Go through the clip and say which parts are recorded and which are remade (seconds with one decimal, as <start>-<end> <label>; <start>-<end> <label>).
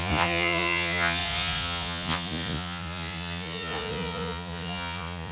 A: 0.0-5.3 remade